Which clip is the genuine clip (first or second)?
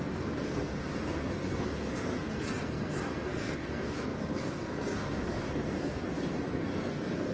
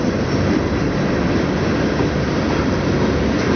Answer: second